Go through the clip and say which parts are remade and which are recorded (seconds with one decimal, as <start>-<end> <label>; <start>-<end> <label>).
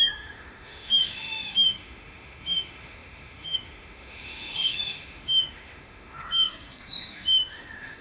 0.0-8.0 remade